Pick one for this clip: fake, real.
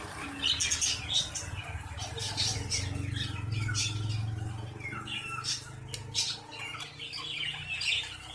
real